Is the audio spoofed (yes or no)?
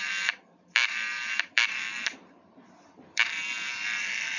yes